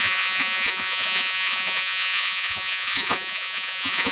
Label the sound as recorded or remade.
remade